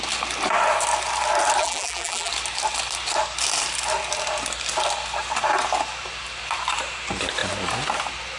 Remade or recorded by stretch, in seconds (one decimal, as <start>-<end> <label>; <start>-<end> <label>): 0.0-1.6 recorded; 1.6-2.3 remade; 2.3-8.4 recorded